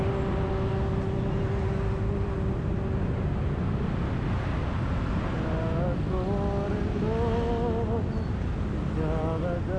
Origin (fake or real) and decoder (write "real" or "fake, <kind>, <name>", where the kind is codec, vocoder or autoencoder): real